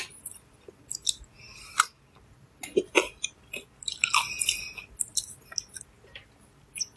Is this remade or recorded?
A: recorded